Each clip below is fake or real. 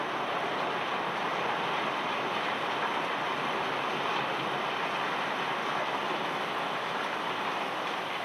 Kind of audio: real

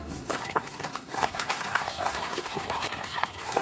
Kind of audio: fake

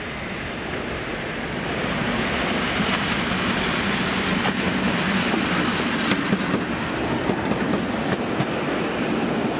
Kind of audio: real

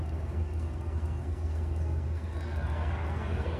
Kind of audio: fake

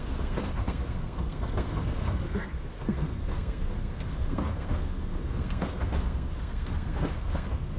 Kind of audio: fake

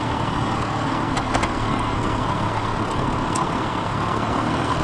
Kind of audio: fake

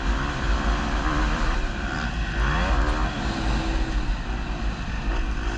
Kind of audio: real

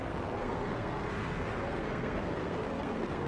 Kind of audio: fake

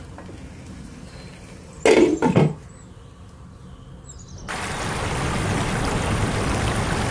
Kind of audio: real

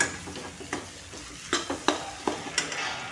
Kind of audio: real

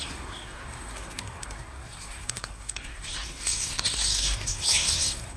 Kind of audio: fake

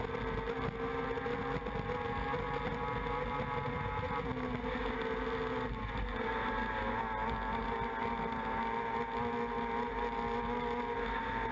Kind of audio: real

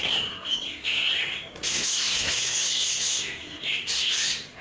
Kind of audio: fake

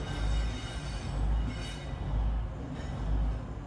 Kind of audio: real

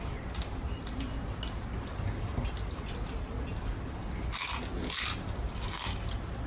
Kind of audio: real